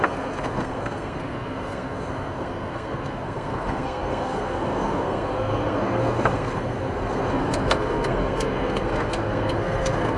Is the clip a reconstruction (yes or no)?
yes